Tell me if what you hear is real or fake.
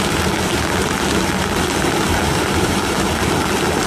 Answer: real